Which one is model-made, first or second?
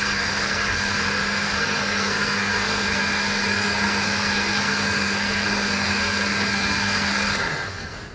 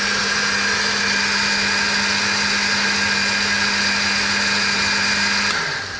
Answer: first